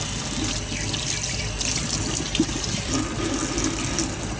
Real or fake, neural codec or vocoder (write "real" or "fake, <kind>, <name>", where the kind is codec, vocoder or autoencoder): real